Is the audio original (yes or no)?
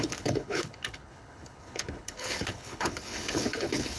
no